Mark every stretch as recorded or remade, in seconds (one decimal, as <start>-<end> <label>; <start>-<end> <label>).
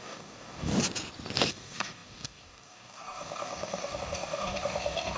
0.0-0.7 remade; 0.7-1.5 recorded; 1.5-5.2 remade